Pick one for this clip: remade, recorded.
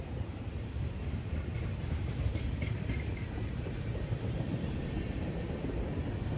remade